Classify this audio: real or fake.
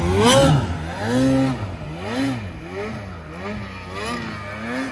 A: real